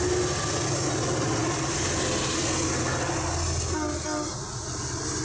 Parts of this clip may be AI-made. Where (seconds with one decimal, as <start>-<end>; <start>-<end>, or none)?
none